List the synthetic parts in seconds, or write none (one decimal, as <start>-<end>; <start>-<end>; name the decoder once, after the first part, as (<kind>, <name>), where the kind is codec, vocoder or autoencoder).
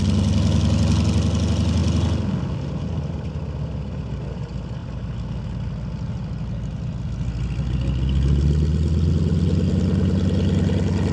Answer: none